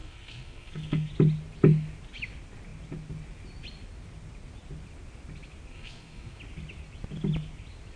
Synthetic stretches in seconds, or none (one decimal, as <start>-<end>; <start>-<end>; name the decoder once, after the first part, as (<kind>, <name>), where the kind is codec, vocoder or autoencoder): 0.0-1.1 (codec, SNAC); 5.7-6.4